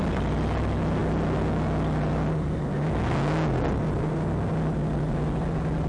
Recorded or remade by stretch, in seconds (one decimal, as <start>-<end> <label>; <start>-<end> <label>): 0.0-5.9 recorded